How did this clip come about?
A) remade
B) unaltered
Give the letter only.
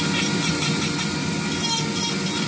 B